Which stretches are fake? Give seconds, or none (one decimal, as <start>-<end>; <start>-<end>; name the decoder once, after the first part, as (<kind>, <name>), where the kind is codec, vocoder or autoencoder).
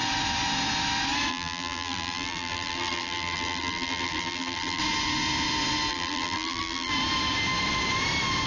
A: 1.3-4.8 (vocoder, BigVGAN v2); 5.9-6.9